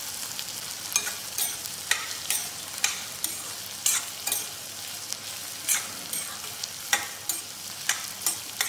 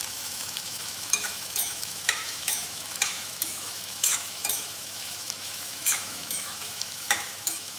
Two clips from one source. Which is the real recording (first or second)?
first